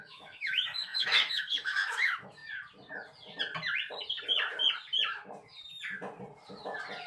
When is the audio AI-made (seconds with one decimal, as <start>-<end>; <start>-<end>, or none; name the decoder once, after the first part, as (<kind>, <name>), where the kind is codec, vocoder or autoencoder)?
0.0-2.4 (autoencoder, DAC-VAE)